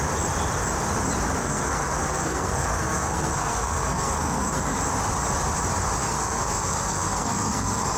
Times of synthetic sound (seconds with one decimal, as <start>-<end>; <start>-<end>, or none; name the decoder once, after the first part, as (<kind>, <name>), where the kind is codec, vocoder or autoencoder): 1.4-4.8 (codec, SNAC); 6.0-8.0

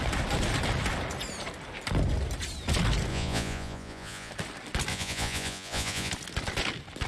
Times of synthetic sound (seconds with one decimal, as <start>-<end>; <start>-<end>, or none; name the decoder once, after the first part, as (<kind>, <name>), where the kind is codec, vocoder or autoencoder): 3.1-4.3 (vocoder, Vocos); 4.9-6.1